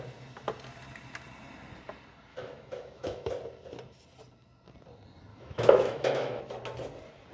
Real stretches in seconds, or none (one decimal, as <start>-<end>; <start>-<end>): 0.0-2.3; 3.3-5.3; 6.4-7.3